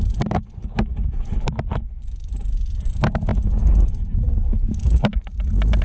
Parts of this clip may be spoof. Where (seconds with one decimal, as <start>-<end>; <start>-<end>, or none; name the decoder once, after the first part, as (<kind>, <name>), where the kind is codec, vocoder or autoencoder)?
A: 0.9-2.9 (vocoder, BigVGAN v2)